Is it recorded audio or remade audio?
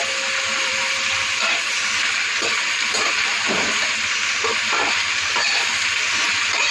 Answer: remade